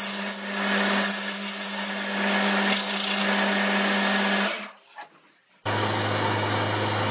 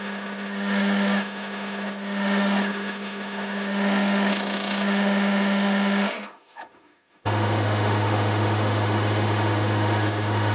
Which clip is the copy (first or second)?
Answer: second